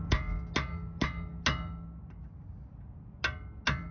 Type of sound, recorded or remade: recorded